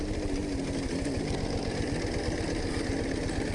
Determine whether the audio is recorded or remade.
recorded